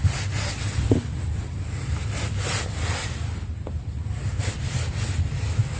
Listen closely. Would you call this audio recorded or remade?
recorded